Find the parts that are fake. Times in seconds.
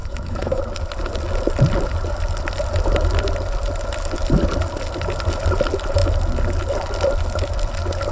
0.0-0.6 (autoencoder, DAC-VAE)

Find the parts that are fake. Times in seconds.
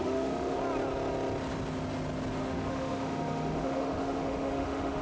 0.0-0.6 (autoencoder, DAC-VAE); 2.4-5.0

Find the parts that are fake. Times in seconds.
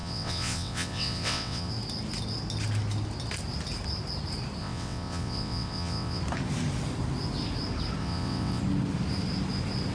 0.0-1.7 (vocoder, WaveNeXt); 4.6-6.2; 8.0-8.6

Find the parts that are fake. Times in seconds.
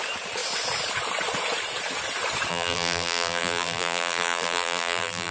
2.5-5.3 (vocoder, BigVGAN v2)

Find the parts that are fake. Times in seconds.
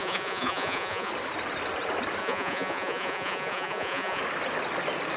0.0-1.1 (vocoder, Vocos); 2.2-4.2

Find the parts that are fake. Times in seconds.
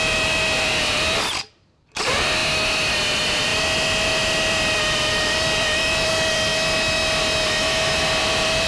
0.0-2.4 (vocoder, BigVGAN v2); 3.1-6.5; 8.2-8.7